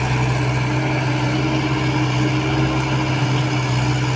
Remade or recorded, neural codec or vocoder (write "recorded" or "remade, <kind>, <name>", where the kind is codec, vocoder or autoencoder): recorded